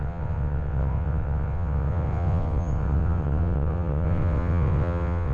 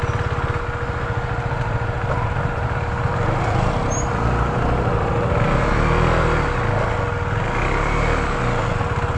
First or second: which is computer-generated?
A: first